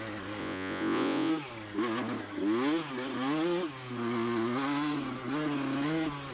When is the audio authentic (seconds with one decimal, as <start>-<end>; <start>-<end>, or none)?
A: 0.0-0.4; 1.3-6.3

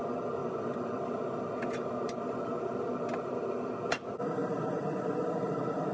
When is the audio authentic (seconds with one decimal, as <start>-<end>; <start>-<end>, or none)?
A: 0.0-0.4; 3.9-4.4

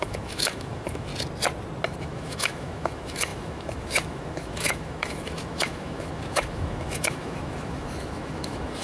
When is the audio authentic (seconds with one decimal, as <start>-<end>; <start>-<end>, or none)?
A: 1.1-2.0